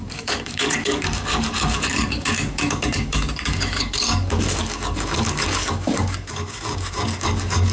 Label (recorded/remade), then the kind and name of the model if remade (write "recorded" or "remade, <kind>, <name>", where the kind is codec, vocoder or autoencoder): remade, codec, DAC